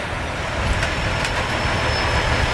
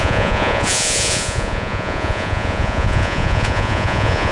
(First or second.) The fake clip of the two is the second